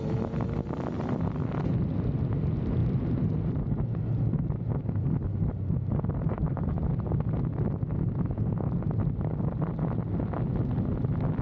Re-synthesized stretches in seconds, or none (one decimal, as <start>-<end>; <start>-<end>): 6.3-6.9